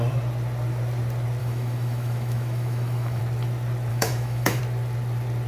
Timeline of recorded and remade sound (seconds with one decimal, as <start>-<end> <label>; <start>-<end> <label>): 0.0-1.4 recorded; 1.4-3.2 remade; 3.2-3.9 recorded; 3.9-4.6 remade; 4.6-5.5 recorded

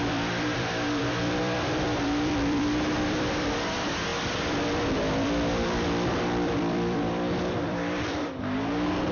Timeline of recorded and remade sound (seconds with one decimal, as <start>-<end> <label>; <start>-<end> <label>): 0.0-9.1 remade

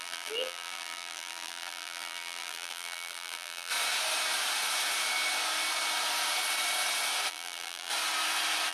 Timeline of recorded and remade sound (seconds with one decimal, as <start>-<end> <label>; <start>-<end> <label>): 0.0-3.7 remade; 3.7-7.3 recorded; 7.3-7.9 remade; 7.9-8.7 recorded

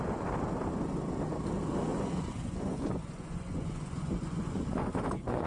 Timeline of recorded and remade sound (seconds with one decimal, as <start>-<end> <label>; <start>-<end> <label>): 0.0-1.9 recorded; 1.9-5.5 remade

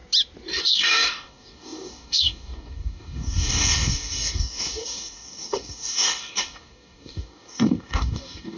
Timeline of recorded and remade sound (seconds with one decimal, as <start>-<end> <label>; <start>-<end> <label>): 0.0-0.6 recorded; 0.6-8.6 remade